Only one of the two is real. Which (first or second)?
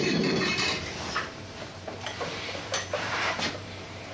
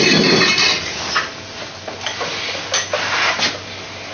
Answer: second